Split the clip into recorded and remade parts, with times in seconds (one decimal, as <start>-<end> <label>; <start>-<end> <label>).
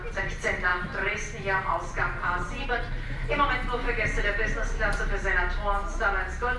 0.0-6.6 recorded